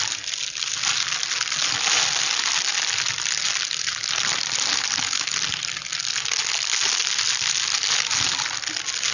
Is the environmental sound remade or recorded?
recorded